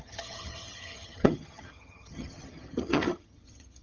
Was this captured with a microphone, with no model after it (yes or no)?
no